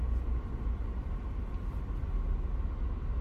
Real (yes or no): yes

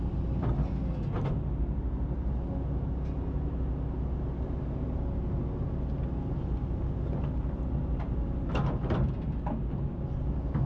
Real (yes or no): yes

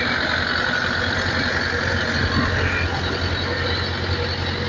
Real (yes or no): yes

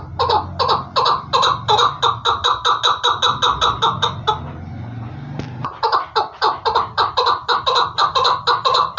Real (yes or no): yes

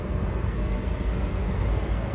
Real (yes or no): no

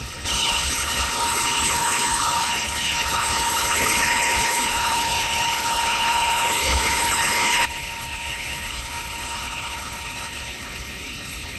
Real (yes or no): no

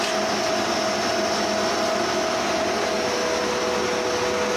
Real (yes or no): yes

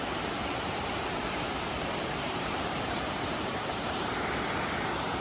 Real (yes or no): no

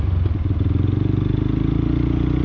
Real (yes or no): yes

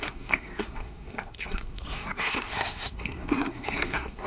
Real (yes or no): no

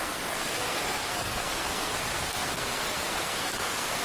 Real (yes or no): no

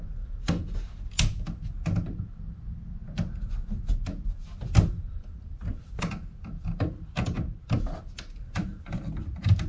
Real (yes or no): yes